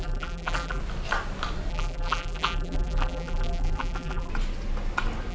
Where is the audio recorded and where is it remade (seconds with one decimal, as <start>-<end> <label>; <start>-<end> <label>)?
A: 0.0-0.8 remade; 0.8-1.7 recorded; 1.7-4.3 remade; 4.3-5.3 recorded